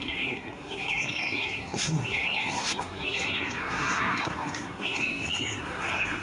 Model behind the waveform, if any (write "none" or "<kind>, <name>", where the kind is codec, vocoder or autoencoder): codec, SNAC